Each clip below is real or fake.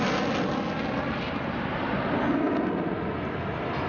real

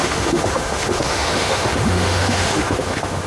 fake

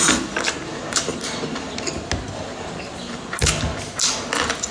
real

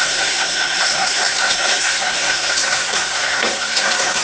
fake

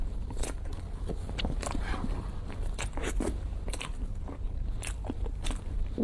fake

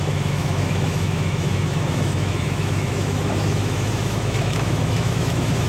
fake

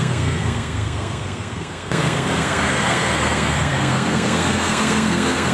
fake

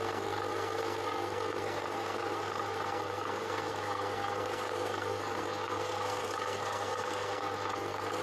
fake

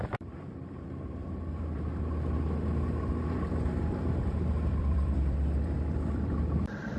fake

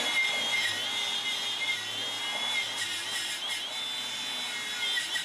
real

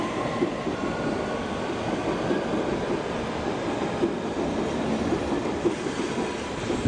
real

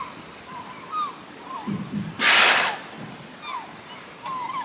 real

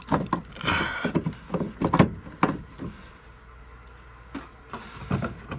real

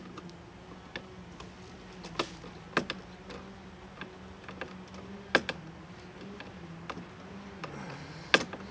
real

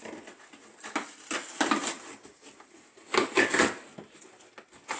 real